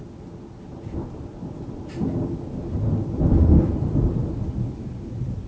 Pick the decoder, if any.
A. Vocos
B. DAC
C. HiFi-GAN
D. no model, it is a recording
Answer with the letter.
D